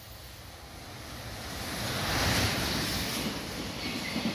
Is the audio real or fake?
fake